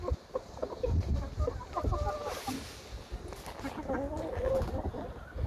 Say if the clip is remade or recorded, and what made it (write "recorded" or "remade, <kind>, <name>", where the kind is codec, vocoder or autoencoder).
recorded